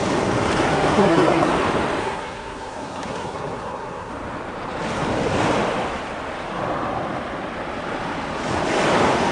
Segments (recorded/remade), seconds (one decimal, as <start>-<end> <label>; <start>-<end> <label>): 0.0-0.7 recorded; 0.7-1.5 remade; 1.5-2.0 recorded; 2.0-4.1 remade; 4.1-9.3 recorded